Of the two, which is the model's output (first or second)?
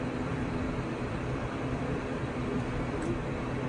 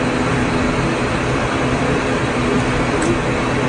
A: first